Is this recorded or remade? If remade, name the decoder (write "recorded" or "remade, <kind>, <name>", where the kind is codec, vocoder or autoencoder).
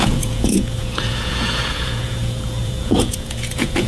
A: remade, vocoder, Vocos